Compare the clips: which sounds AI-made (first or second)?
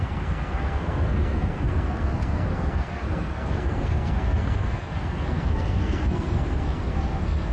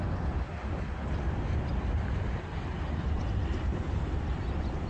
first